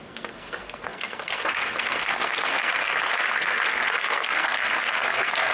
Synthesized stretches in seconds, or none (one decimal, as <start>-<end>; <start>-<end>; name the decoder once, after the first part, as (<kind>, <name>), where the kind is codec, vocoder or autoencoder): 0.0-5.5 (codec, SNAC)